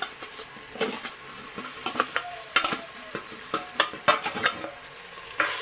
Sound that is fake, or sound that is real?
real